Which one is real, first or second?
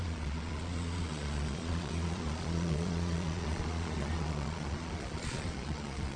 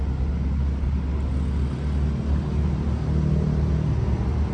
second